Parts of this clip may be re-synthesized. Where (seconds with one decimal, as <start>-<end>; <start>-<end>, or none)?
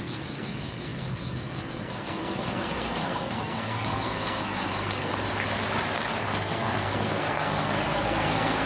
0.0-5.1; 6.2-8.7